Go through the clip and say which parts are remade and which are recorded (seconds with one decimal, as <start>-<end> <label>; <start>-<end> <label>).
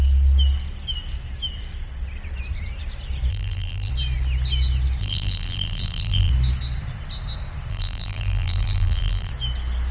0.0-3.3 recorded; 3.3-3.9 remade; 3.9-5.0 recorded; 5.0-6.3 remade; 6.3-7.7 recorded; 7.7-9.3 remade; 9.3-9.9 recorded